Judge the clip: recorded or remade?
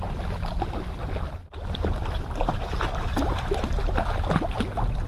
recorded